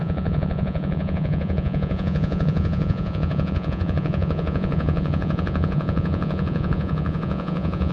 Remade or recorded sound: remade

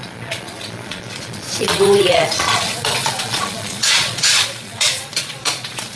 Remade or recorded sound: remade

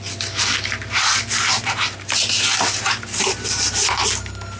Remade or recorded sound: recorded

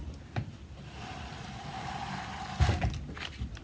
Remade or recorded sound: recorded